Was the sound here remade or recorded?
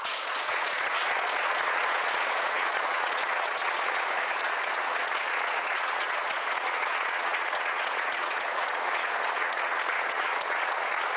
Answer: remade